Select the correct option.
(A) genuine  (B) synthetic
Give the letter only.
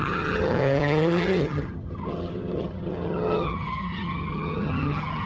B